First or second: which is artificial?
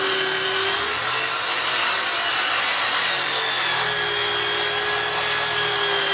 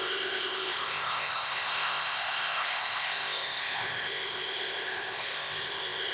second